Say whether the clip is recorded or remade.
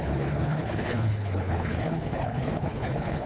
remade